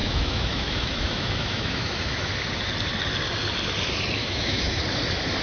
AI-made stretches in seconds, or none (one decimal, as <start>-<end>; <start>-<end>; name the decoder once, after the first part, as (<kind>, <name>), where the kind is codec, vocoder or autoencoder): 0.0-2.3 (autoencoder, DAC-VAE); 4.2-4.8